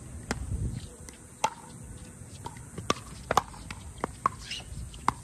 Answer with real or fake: real